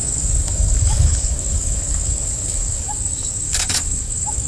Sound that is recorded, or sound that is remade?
remade